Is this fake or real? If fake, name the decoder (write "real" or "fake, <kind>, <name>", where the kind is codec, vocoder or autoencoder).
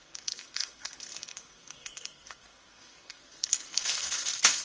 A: fake, codec, SNAC